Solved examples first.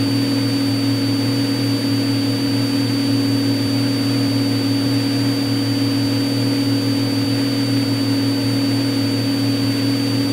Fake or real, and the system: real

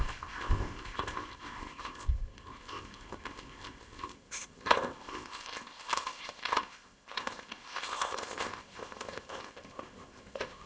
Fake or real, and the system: fake, codec, ZipCodec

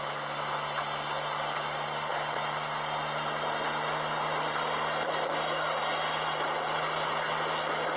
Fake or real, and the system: real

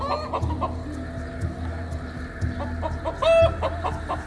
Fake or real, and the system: real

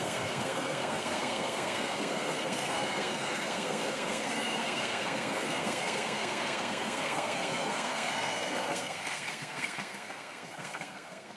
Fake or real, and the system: fake, codec, SNAC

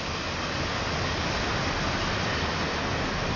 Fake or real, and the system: real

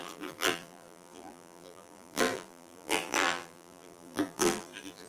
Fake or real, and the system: fake, vocoder, BigVGAN v2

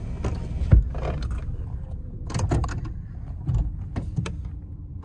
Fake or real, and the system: real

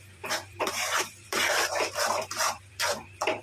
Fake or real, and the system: fake, vocoder, BigVGAN v2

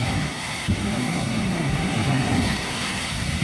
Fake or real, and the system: fake, codec, SNAC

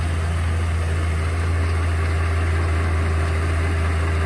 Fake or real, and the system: real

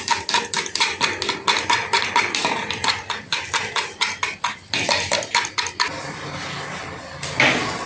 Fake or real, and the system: real